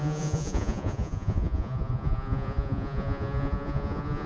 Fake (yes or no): yes